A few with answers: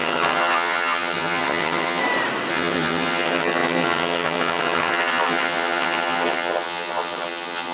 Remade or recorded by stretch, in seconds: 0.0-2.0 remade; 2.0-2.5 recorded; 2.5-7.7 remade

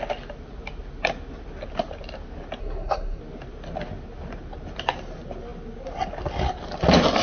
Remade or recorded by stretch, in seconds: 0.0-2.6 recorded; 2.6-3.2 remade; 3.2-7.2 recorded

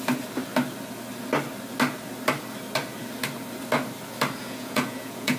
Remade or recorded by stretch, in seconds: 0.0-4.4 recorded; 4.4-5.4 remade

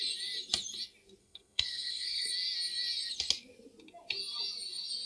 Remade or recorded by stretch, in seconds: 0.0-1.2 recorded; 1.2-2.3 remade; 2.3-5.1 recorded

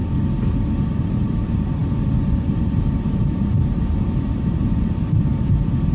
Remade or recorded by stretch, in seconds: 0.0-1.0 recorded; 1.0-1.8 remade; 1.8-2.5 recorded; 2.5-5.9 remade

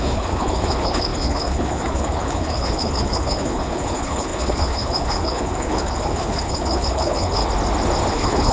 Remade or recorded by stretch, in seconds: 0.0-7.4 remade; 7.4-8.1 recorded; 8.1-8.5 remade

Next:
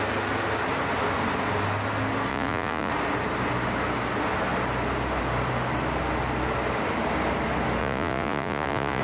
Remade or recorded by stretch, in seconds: 0.0-2.3 recorded; 2.3-2.9 remade; 2.9-7.8 recorded; 7.8-9.0 remade